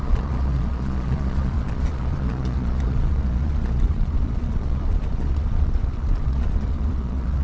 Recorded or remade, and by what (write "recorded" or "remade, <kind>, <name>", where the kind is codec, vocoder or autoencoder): remade, vocoder, Vocos